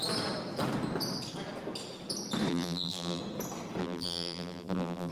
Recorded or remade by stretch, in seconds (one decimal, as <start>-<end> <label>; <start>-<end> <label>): 0.0-2.5 recorded; 2.5-3.2 remade; 3.2-3.8 recorded; 3.8-5.1 remade